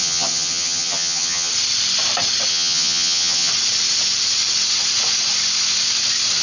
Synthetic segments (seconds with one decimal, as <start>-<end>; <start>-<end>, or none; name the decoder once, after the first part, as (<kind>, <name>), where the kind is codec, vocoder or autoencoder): 0.0-1.5 (vocoder, HiFi-GAN); 2.5-3.5